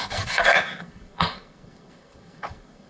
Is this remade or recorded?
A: remade